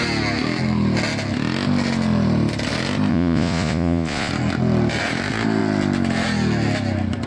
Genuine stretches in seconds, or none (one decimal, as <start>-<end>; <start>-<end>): 0.0-3.1; 4.3-7.3